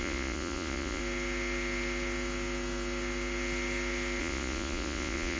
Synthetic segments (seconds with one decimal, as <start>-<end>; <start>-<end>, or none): 0.0-1.0; 4.2-5.4